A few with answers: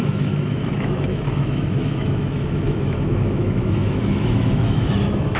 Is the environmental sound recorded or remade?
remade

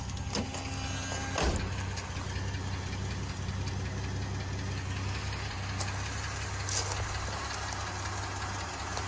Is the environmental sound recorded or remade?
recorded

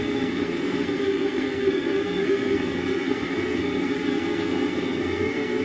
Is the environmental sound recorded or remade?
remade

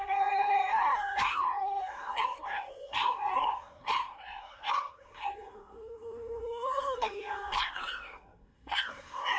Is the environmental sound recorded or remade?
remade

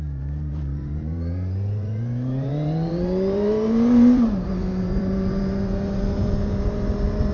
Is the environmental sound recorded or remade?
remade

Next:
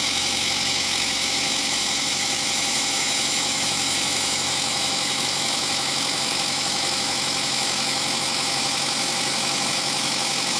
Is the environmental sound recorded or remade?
remade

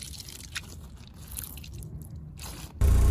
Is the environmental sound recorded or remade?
remade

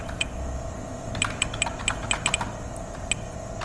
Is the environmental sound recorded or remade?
recorded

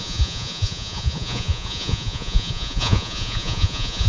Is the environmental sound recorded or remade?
remade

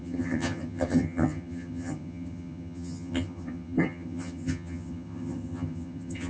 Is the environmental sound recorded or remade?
remade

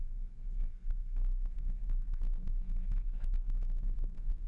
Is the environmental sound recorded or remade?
remade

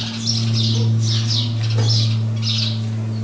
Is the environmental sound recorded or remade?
recorded